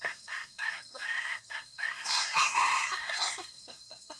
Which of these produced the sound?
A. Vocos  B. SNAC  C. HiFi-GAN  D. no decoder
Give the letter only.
B